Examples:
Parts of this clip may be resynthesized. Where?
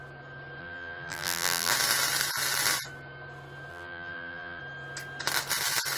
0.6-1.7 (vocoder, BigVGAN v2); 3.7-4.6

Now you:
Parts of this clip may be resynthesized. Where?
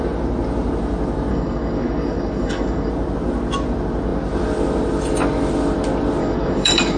1.3-2.9 (codec, DAC); 6.2-7.0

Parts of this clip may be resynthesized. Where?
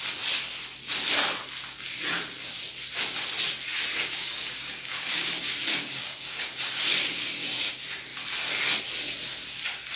3.9-7.7 (codec, DAC)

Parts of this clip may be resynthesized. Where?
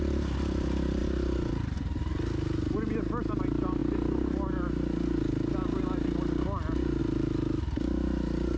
none